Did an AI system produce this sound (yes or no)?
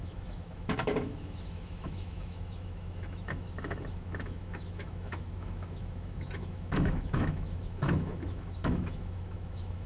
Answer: yes